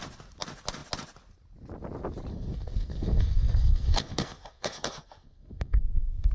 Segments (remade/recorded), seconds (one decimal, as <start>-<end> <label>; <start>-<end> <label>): 0.0-2.3 recorded; 2.3-6.3 remade

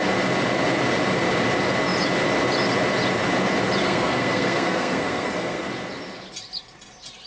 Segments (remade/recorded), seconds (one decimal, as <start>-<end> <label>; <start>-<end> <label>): 0.0-3.8 recorded; 3.8-5.7 remade; 5.7-7.3 recorded